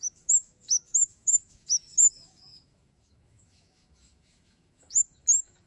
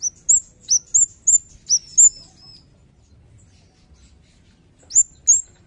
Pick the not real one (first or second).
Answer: first